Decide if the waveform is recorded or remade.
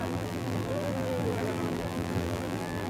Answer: remade